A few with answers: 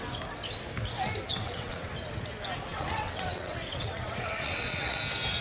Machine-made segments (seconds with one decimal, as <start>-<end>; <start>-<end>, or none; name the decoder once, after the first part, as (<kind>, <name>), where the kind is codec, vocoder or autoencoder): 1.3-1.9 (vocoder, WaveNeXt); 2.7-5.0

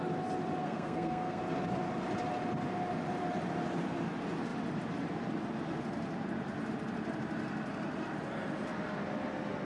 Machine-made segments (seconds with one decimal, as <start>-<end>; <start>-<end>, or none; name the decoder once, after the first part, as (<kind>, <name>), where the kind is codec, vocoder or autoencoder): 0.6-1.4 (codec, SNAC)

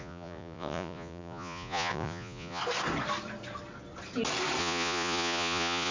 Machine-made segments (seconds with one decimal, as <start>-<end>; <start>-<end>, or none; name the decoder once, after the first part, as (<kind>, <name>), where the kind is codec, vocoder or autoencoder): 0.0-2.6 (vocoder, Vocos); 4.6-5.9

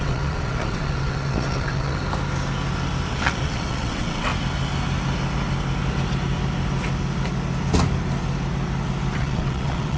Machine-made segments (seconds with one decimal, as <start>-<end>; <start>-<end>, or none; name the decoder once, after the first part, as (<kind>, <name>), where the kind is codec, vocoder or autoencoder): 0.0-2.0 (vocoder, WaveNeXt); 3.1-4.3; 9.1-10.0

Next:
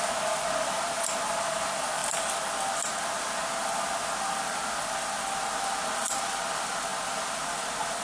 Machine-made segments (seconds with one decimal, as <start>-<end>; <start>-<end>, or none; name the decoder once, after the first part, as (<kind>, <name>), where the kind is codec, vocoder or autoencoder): 2.0-2.7 (vocoder, BigVGAN v2)

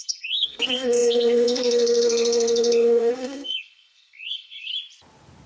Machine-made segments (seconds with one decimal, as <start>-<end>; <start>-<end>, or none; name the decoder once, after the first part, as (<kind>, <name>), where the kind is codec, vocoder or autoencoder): 0.0-4.7 (codec, SNAC)